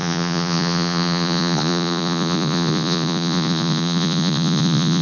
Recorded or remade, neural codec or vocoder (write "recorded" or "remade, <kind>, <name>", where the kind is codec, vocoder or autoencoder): remade, vocoder, Vocos